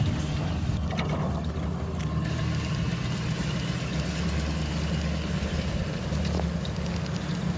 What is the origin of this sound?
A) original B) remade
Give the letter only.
A